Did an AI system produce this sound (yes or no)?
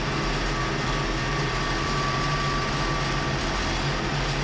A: no